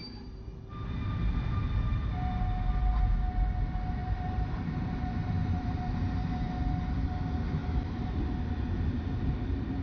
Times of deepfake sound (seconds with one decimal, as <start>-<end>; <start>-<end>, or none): 4.0-6.0